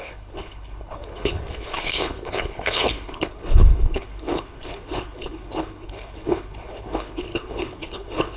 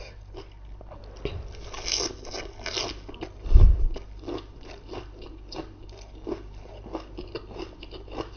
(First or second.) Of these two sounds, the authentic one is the second